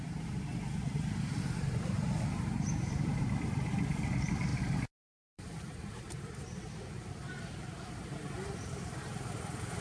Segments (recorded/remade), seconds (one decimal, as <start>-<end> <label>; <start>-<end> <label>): 0.0-9.8 remade